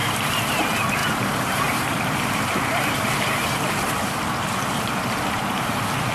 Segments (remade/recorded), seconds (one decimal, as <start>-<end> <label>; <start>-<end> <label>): 0.0-6.1 remade